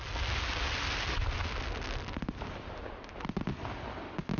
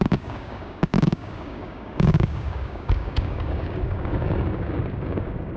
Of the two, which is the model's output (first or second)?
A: second